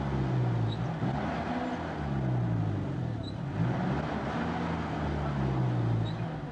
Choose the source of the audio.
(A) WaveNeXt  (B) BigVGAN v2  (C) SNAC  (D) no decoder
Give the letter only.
D